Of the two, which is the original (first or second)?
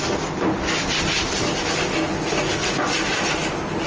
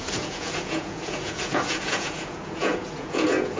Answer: first